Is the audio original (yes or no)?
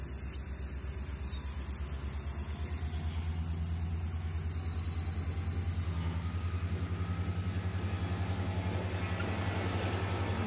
yes